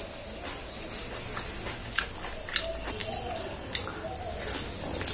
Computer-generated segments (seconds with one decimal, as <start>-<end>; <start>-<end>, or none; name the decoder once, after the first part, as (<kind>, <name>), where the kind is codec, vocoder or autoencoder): none